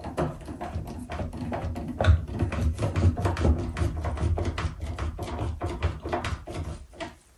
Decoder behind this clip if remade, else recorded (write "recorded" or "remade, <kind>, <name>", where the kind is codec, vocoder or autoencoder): recorded